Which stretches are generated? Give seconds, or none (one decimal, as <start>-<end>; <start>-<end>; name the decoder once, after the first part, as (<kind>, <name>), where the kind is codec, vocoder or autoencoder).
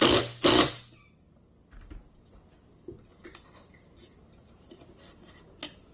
none